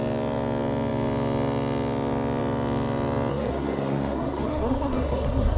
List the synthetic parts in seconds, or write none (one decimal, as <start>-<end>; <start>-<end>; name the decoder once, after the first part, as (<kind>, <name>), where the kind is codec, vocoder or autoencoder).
3.3-5.6 (codec, SNAC)